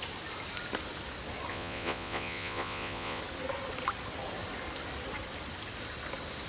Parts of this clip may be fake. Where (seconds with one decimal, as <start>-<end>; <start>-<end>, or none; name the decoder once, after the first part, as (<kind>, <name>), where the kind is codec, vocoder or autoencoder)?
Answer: 1.5-3.2 (vocoder, Vocos)